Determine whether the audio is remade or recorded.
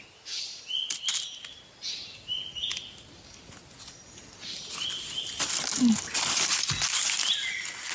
recorded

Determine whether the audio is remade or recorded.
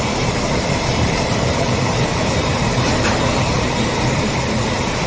remade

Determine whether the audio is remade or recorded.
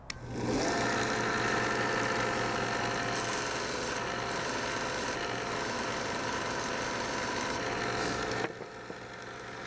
recorded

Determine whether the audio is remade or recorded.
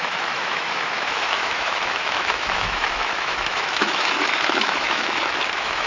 remade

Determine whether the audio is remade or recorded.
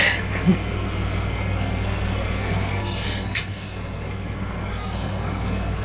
remade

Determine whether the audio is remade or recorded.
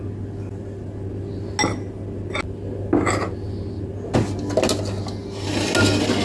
recorded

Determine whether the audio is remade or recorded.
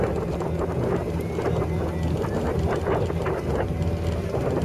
recorded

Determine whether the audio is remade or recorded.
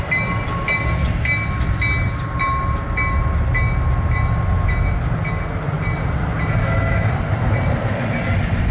recorded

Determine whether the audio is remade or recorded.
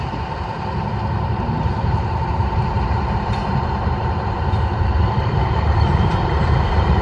remade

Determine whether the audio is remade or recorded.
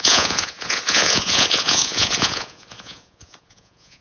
remade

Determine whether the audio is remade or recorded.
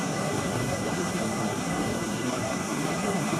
remade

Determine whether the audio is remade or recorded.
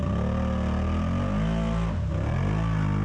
recorded